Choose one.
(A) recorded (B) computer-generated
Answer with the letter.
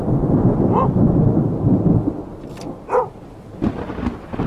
A